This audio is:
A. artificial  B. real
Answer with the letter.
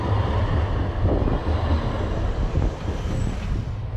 B